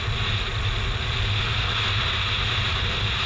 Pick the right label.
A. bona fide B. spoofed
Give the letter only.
A